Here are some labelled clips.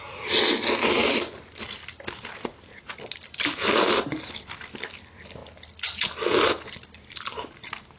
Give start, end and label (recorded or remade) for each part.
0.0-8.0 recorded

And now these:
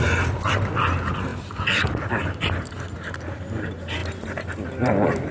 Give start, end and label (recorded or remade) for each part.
0.0-5.3 recorded

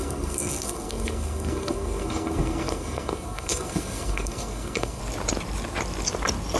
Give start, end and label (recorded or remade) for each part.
0.0-5.0 remade; 5.0-6.6 recorded